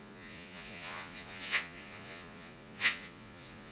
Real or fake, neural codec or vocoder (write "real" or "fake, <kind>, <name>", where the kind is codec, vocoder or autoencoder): fake, vocoder, Vocos